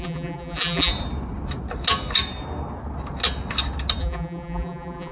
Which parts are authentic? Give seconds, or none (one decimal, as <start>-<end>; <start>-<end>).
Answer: 0.9-4.0